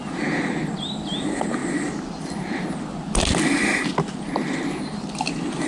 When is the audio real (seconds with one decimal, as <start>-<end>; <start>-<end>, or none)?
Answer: 0.0-5.7